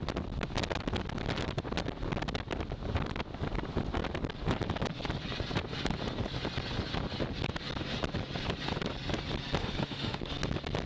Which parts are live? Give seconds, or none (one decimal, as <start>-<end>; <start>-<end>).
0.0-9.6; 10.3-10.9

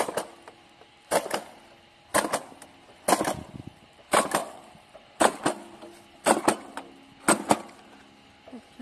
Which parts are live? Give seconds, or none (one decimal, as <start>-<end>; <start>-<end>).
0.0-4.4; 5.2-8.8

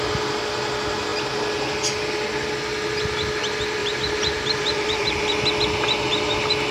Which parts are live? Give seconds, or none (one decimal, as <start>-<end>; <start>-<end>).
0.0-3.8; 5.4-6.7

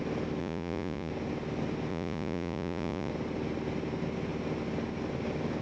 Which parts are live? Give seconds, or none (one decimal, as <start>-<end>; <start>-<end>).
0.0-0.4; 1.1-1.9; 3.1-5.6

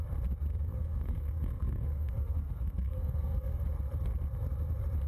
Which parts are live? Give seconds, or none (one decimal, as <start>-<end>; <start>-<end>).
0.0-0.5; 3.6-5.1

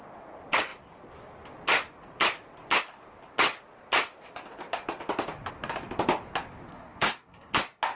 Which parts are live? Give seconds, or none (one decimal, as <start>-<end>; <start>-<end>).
0.0-6.7; 7.5-8.0

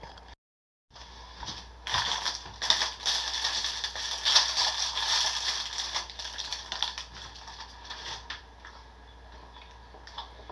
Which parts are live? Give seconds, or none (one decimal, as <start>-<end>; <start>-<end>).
0.0-10.5